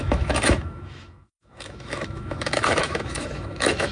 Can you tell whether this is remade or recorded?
remade